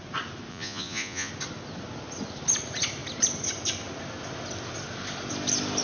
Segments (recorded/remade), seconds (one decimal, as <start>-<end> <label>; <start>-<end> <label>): 0.0-0.5 recorded; 0.5-1.3 remade; 1.3-5.8 recorded